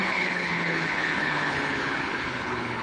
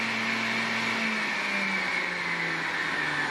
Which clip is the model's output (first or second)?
first